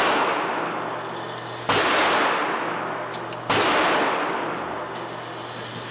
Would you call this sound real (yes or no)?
yes